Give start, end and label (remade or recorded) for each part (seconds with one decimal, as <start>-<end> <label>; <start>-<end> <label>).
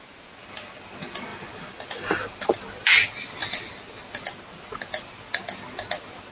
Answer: 0.0-1.3 recorded; 1.3-2.4 remade; 2.4-6.3 recorded